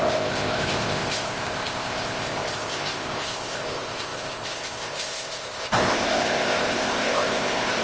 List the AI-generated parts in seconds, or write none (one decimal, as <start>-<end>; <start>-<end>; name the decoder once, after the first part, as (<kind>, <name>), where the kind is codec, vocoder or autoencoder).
0.0-7.8 (codec, ZipCodec)